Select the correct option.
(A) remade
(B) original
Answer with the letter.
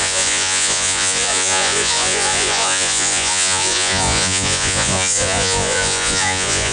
A